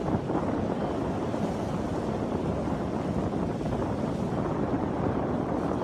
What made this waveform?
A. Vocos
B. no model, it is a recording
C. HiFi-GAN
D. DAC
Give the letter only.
B